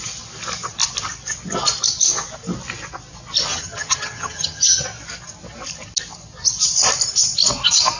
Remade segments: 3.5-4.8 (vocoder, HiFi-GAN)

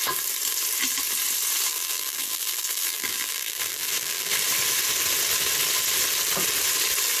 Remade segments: 1.7-4.3 (vocoder, BigVGAN v2)

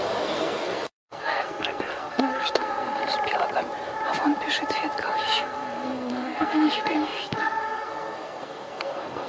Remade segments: 0.0-3.0 (codec, SNAC); 5.2-9.3

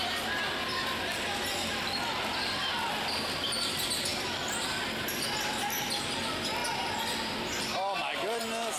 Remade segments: none

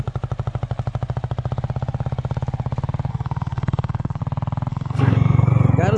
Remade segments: 3.1-4.2 (codec, SNAC); 4.7-5.5

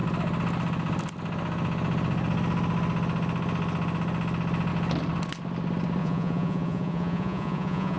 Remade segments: 6.0-8.0 (vocoder, Vocos)